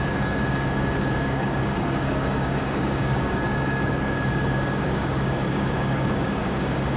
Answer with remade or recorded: remade